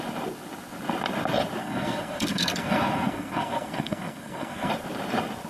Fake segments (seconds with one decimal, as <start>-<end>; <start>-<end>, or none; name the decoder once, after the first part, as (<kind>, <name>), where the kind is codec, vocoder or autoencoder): 1.6-4.7 (codec, SNAC)